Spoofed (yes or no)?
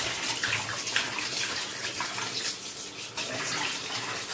no